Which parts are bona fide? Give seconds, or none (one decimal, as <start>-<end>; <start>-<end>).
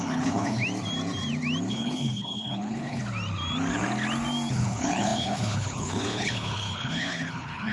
0.6-1.7; 3.0-4.5